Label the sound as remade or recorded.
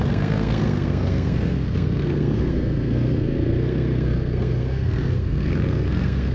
remade